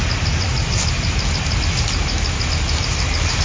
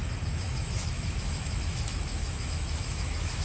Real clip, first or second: first